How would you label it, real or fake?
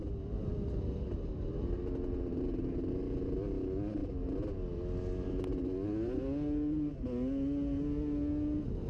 real